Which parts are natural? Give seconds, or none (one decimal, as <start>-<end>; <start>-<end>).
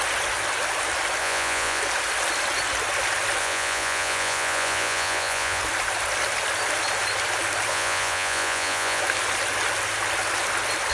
0.0-1.2; 1.8-3.4; 5.6-7.7; 9.0-10.9